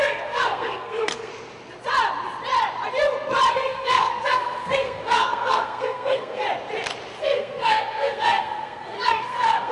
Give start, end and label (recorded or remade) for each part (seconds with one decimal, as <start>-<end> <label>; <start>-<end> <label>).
0.0-1.3 remade; 1.3-3.5 recorded; 3.5-6.4 remade; 6.4-7.2 recorded; 7.2-9.7 remade